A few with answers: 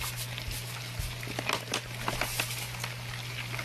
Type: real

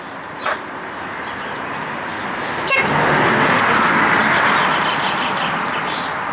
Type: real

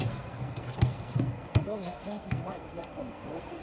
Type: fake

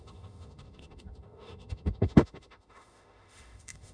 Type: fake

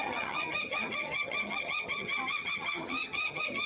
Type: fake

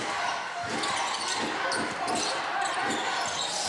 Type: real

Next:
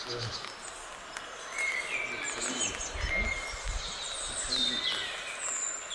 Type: real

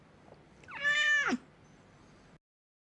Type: real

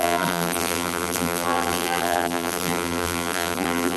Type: fake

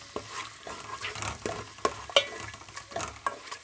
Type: real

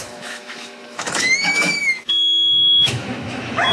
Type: fake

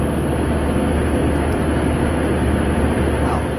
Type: fake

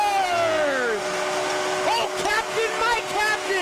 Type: real